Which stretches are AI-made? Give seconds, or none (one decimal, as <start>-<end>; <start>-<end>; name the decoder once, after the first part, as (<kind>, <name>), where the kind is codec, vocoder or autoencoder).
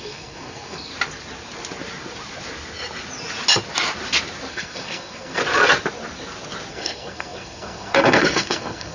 0.0-0.9 (codec, SNAC); 4.5-5.4; 6.7-8.9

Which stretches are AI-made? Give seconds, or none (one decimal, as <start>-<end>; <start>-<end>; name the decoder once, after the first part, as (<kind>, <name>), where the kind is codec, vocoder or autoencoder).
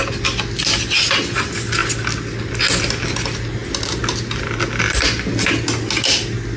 none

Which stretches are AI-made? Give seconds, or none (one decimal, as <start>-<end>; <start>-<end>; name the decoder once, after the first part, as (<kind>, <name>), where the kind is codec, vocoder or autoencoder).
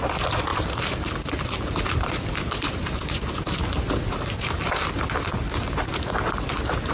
0.5-4.6 (vocoder, BigVGAN v2)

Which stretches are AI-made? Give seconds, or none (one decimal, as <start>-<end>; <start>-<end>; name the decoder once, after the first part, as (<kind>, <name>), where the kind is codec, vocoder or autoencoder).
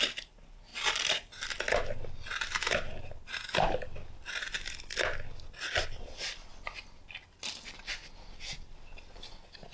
0.7-1.3 (vocoder, BigVGAN v2)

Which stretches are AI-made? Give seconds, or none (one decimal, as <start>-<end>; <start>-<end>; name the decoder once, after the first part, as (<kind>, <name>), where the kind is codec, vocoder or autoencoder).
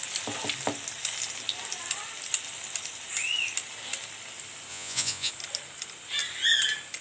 4.7-5.3 (vocoder, Vocos)